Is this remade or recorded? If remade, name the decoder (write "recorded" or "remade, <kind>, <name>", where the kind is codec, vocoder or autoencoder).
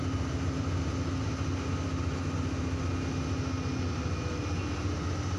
recorded